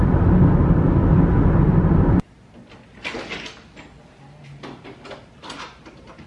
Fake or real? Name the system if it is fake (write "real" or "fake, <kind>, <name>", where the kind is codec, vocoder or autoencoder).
real